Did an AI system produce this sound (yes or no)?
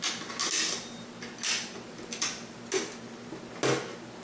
no